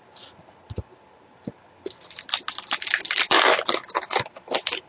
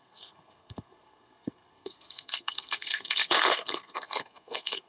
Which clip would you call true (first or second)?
first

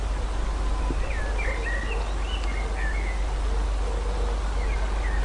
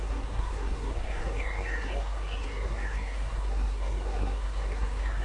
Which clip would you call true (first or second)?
first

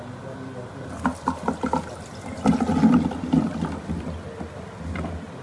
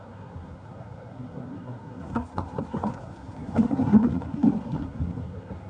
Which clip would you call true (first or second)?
first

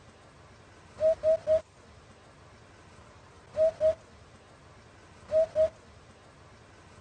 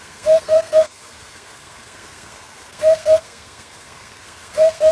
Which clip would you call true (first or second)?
first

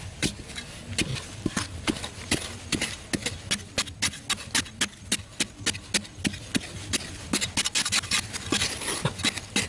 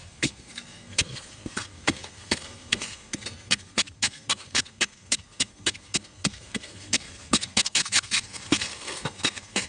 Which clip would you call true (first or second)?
first